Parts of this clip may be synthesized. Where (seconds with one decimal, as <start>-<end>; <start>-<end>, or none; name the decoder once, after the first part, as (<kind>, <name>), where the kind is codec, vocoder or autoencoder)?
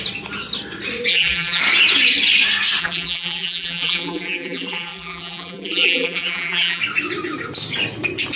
1.1-1.6 (vocoder, BigVGAN v2); 2.8-6.8